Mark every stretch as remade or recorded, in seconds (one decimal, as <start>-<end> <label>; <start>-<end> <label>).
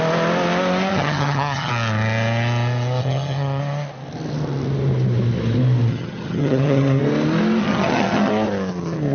0.0-0.9 recorded; 0.9-1.7 remade; 1.7-3.0 recorded; 3.0-3.6 remade; 3.6-5.9 recorded; 5.9-7.0 remade; 7.0-7.6 recorded; 7.6-8.3 remade; 8.3-9.1 recorded